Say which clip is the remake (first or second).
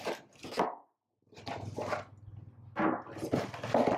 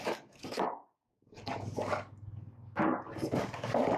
second